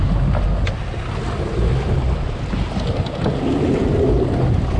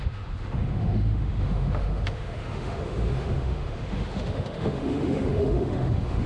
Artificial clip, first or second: second